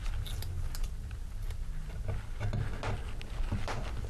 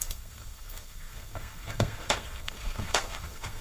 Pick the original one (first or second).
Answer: first